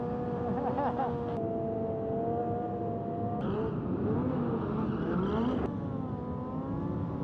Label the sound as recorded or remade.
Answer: recorded